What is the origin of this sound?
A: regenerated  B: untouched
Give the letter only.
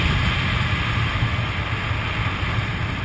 B